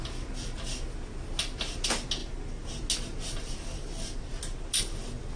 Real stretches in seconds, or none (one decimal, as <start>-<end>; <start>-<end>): 0.0-5.4